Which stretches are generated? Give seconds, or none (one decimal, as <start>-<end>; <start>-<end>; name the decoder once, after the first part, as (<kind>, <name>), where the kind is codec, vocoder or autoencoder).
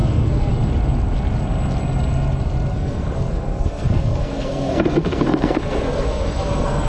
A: 0.0-0.5 (codec, SNAC); 2.7-6.9